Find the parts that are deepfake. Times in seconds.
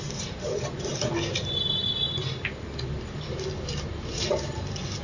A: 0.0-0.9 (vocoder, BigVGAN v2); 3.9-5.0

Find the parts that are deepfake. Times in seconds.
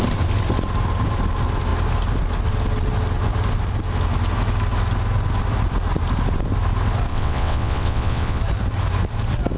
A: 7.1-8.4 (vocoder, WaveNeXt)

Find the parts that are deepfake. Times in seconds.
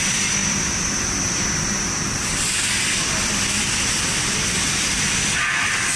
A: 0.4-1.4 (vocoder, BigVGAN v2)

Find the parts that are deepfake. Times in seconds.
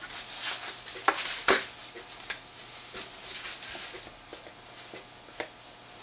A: none